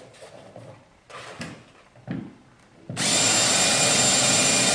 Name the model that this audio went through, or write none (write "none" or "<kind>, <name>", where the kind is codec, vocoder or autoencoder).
none